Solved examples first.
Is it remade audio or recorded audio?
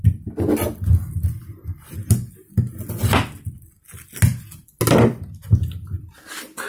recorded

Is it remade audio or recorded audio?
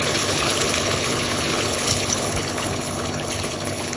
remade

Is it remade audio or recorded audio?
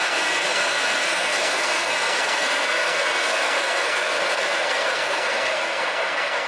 remade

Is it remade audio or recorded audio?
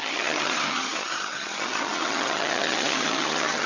remade